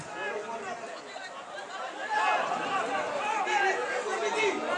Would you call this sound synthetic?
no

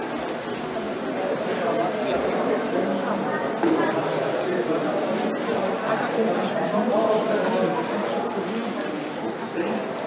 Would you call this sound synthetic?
no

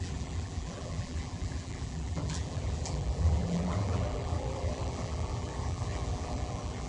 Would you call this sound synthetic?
yes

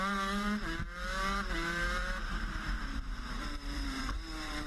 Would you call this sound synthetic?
yes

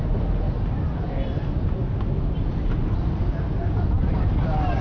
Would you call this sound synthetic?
no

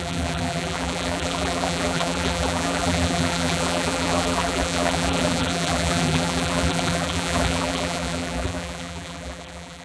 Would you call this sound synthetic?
yes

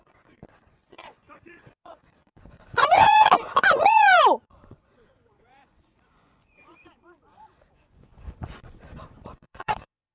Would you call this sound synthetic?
yes